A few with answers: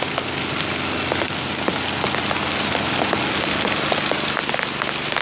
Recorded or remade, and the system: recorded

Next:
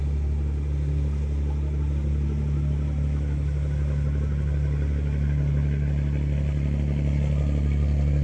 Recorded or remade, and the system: recorded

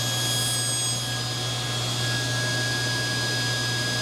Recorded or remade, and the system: recorded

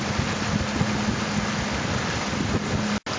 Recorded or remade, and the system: recorded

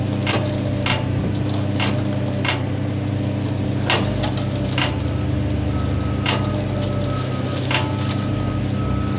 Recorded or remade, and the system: recorded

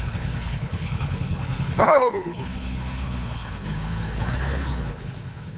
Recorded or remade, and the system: remade, codec, HILCodec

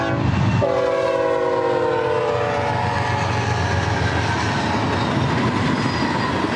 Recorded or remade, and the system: recorded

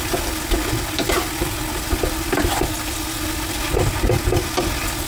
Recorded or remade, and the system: recorded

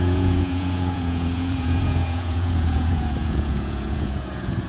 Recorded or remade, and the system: remade, vocoder, Vocos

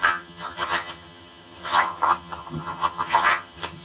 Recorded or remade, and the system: remade, vocoder, HiFi-GAN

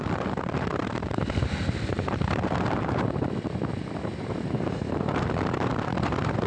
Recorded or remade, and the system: remade, vocoder, BigVGAN v2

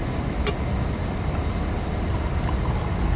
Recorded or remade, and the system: recorded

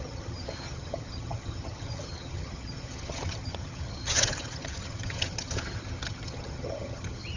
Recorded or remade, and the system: remade, vocoder, HiFi-GAN